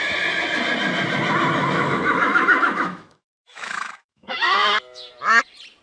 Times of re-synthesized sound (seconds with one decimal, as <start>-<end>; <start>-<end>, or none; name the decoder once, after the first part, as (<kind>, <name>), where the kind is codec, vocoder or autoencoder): 1.6-5.1 (autoencoder, DAC-VAE)